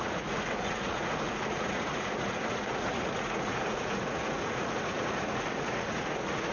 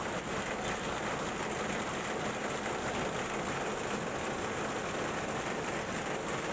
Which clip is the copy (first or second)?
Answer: first